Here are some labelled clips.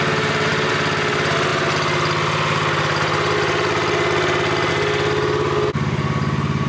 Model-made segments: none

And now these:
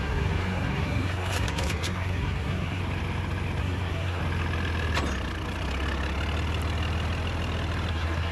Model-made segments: 0.0-2.8 (codec, SNAC); 3.6-4.2; 7.9-8.3

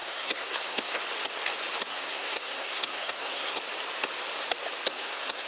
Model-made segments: 0.0-1.0 (codec, SNAC); 1.9-3.6; 4.9-5.5

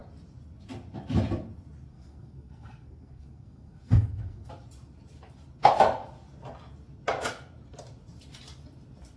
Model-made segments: 1.9-4.5 (codec, SNAC)

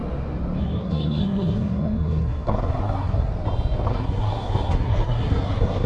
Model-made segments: 0.6-3.3 (codec, SNAC); 3.9-5.9

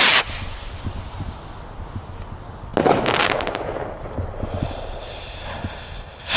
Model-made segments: none

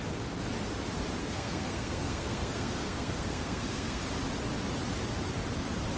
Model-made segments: 1.2-4.0 (codec, SNAC)